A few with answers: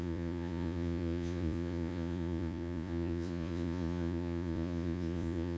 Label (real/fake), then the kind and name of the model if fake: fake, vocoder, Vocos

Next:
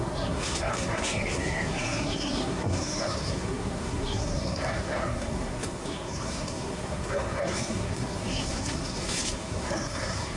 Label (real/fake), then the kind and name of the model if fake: fake, codec, SNAC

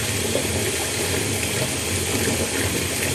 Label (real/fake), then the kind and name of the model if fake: real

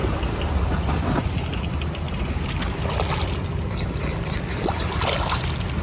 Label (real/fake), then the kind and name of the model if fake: real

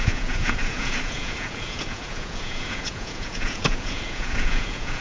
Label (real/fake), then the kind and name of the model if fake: fake, vocoder, Vocos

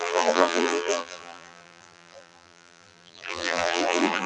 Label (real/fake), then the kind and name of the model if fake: fake, vocoder, BigVGAN v2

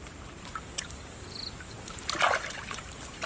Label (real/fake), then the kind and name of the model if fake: real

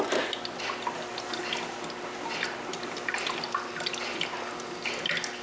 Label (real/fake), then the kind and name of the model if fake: real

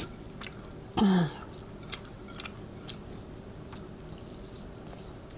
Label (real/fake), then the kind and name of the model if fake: real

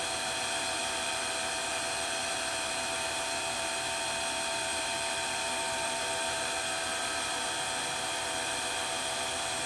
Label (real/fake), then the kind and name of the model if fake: fake, vocoder, BigVGAN v2